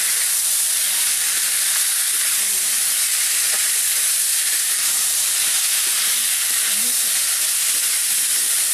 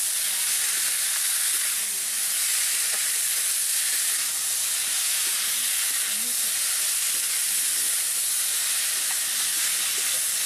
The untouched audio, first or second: second